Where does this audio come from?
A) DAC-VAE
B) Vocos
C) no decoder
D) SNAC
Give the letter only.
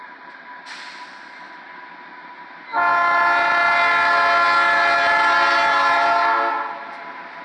C